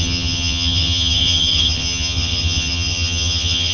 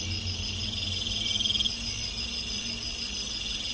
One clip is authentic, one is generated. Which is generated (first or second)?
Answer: first